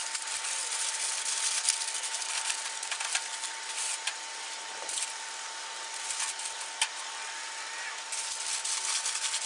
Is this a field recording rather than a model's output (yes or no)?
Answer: yes